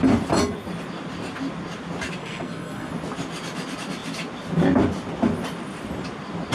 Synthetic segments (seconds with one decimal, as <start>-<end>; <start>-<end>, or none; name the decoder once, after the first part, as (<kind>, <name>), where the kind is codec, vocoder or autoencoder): 2.2-2.9 (codec, SNAC)